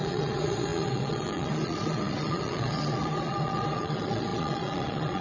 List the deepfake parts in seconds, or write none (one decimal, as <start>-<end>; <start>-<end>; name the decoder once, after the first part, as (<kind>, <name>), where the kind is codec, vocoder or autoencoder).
0.0-5.2 (vocoder, Vocos)